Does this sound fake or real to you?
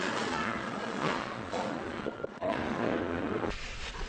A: fake